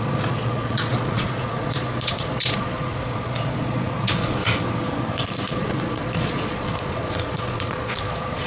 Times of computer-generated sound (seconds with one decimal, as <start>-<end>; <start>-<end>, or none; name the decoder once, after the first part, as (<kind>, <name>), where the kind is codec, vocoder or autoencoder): 0.0-4.4 (vocoder, Vocos); 5.5-8.5

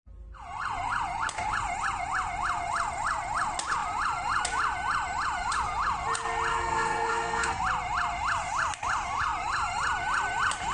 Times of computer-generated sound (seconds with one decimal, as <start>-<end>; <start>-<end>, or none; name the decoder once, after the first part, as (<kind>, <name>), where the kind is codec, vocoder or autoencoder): 6.5-7.6 (codec, SNAC)

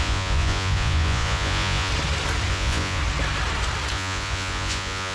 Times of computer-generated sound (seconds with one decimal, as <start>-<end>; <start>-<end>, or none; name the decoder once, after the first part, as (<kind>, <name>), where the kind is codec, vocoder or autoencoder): 0.0-1.9 (vocoder, Vocos); 2.5-3.0; 3.9-5.1

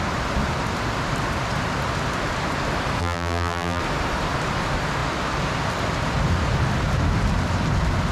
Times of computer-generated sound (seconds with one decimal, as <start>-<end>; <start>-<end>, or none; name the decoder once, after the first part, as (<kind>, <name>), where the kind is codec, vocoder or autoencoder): 3.0-3.8 (vocoder, BigVGAN v2)